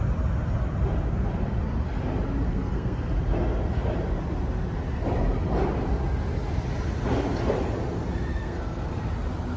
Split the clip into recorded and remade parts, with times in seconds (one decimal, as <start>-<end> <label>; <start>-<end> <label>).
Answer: 0.0-2.5 recorded; 2.5-3.1 remade; 3.1-8.3 recorded; 8.3-9.1 remade; 9.1-9.6 recorded